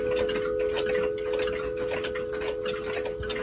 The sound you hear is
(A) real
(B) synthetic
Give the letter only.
A